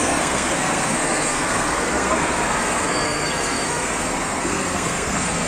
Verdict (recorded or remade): remade